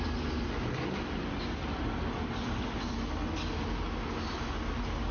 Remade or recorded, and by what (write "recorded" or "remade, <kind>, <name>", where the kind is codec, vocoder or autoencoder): recorded